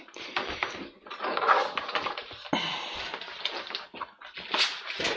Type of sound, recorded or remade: recorded